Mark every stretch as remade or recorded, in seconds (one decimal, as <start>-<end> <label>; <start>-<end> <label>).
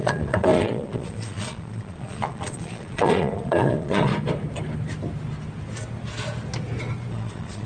0.0-4.1 remade; 4.1-7.1 recorded; 7.1-7.7 remade